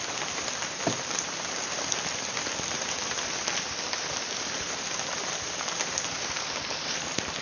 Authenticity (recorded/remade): recorded